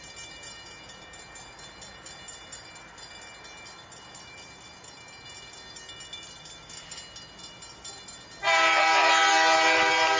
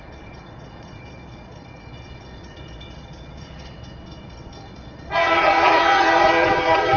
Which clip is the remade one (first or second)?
second